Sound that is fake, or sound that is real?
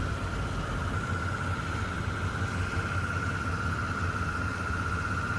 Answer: real